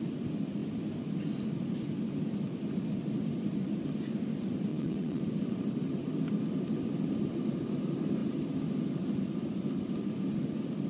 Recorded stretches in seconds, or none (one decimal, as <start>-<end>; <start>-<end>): 0.0-4.7; 5.2-10.9